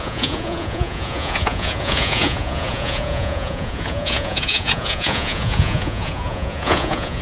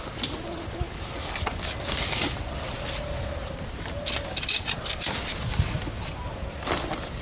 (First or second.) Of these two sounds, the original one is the second